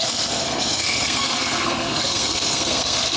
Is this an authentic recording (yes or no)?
no